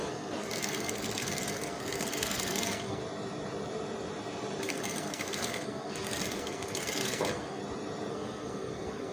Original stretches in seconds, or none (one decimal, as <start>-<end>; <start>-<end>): 3.0-4.6; 7.6-8.1